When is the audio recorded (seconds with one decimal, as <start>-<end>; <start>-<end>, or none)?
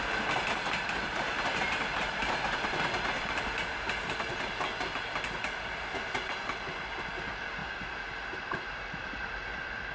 0.0-9.9